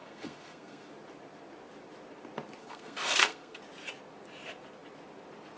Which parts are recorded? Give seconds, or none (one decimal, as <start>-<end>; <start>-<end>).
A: 0.9-2.6; 3.6-5.6